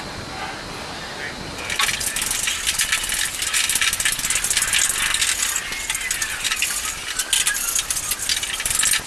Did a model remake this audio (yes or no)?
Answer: no